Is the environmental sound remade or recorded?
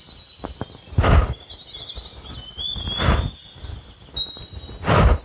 recorded